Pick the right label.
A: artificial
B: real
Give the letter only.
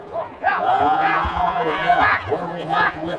A